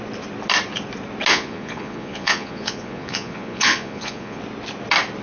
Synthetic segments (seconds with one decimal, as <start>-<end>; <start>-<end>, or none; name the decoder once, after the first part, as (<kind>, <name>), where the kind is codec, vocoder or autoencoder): 1.3-4.4 (vocoder, Vocos)